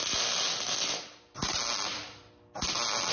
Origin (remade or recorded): recorded